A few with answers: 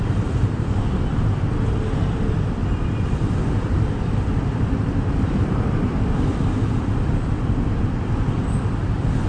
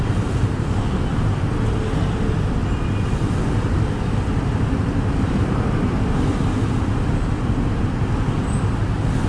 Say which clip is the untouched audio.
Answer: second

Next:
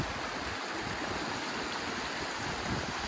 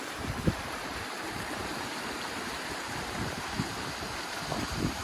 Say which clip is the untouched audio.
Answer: first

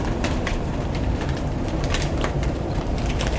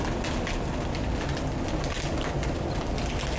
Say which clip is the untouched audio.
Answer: second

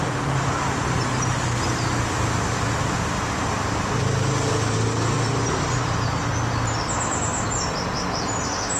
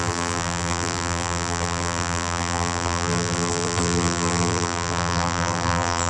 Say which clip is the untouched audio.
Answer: first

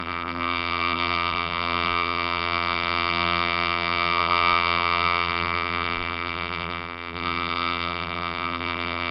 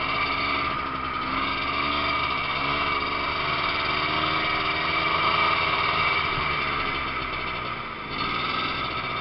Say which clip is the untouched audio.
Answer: second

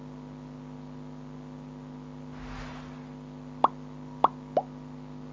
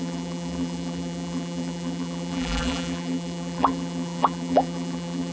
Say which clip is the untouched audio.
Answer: first